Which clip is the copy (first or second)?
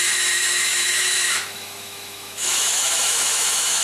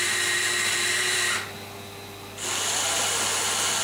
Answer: first